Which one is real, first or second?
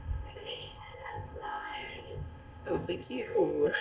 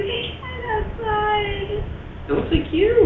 second